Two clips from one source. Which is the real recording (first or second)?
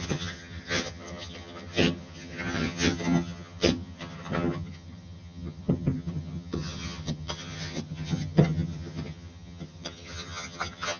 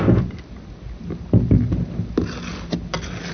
second